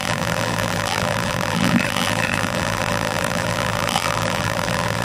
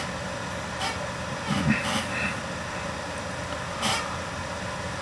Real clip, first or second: second